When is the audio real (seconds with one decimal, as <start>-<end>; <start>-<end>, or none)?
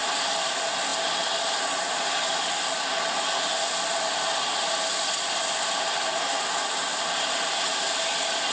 0.0-8.5